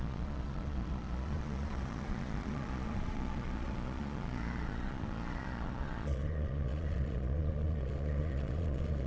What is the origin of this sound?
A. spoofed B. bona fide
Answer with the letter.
A